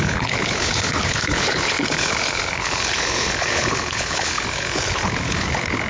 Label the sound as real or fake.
fake